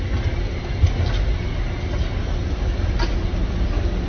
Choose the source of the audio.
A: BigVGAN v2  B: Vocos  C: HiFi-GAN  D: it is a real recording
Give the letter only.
D